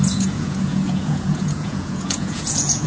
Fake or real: fake